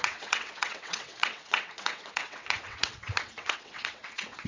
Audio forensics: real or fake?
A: fake